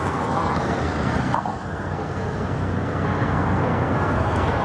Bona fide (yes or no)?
no